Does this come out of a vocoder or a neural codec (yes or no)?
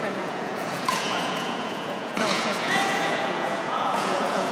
yes